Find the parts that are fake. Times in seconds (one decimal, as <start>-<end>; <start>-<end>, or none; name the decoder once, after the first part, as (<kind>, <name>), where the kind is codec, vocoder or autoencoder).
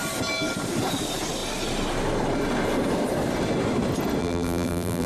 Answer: 4.2-5.1 (vocoder, BigVGAN v2)